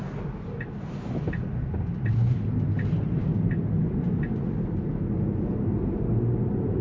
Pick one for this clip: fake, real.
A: real